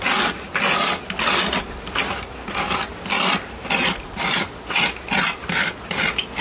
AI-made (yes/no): no